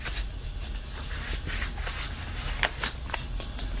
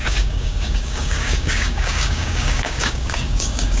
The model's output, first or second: second